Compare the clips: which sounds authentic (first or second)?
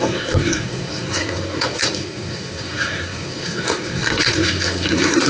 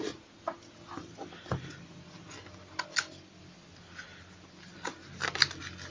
second